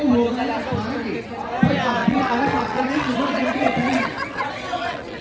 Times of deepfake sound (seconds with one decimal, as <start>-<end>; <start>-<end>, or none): 2.0-5.2